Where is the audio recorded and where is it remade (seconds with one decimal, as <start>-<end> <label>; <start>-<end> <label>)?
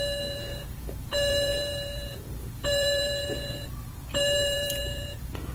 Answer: 0.0-5.5 remade